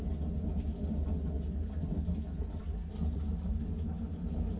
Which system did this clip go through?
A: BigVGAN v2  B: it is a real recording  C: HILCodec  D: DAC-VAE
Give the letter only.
B